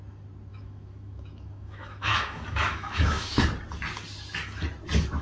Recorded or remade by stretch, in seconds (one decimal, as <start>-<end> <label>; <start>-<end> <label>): 0.0-0.5 recorded; 0.5-3.4 remade; 3.4-5.2 recorded